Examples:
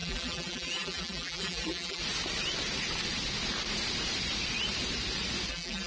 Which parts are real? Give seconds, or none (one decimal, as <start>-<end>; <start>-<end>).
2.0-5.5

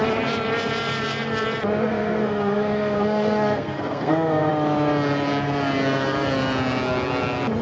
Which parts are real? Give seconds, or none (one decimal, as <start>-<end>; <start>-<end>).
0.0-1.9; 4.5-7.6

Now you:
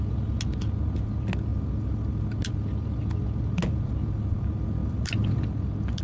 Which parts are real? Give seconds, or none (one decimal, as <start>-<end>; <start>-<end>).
0.0-6.0